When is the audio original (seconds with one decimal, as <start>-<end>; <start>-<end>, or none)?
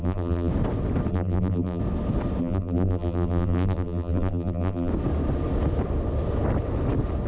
0.5-1.1; 1.8-2.4; 4.9-7.3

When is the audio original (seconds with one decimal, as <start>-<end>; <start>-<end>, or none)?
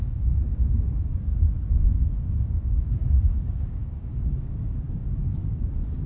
none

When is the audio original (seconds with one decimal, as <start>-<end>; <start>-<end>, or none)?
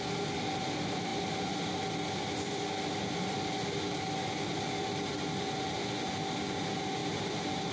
0.0-7.0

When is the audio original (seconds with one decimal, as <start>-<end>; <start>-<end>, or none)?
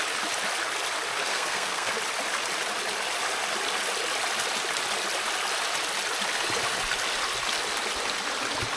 0.0-1.3; 1.9-8.8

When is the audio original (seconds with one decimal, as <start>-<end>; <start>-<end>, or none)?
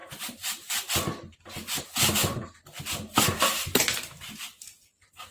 0.0-5.3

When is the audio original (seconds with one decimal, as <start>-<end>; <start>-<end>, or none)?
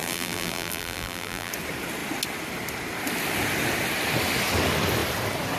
1.5-5.6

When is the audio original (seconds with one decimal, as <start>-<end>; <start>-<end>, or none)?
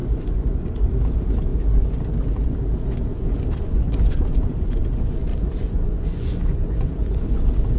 0.9-3.1; 4.8-5.3; 7.3-7.8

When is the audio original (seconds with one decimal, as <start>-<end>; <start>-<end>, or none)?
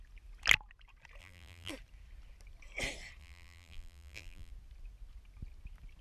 0.0-1.2; 1.7-3.2; 4.5-6.0